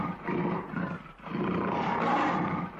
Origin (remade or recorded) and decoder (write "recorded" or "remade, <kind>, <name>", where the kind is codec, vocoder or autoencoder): remade, vocoder, BigVGAN v2